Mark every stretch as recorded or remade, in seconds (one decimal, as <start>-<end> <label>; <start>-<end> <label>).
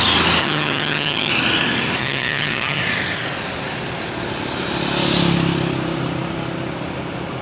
0.0-0.4 recorded; 0.4-1.3 remade; 1.3-2.0 recorded; 2.0-2.8 remade; 2.8-7.4 recorded